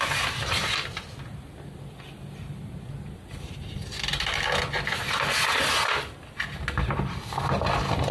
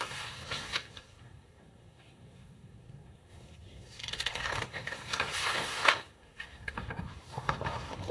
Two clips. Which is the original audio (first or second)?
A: first